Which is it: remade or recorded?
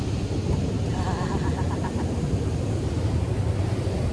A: recorded